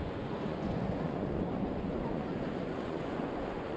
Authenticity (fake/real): fake